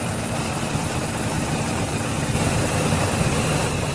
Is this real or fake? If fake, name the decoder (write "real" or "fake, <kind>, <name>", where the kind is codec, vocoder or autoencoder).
fake, vocoder, BigVGAN v2